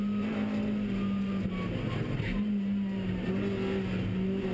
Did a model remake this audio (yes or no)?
no